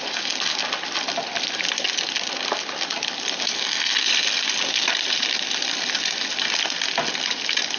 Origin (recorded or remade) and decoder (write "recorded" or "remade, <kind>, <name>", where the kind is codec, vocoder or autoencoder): recorded